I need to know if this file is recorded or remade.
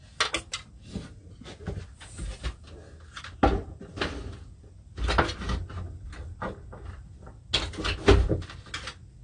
recorded